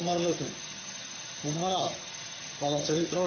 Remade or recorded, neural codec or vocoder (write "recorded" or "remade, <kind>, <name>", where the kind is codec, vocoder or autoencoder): remade, vocoder, HiFi-GAN